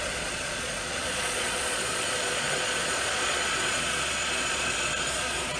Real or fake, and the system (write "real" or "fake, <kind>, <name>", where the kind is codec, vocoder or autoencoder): fake, vocoder, Vocos